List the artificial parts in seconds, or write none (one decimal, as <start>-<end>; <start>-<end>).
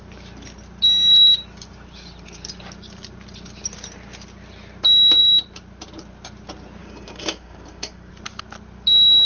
6.8-8.1